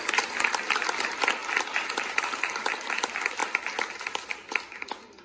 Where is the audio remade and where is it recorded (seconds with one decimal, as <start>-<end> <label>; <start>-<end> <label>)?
0.0-5.2 recorded